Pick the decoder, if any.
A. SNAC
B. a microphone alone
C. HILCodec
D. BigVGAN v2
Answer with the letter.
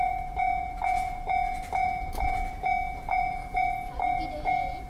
D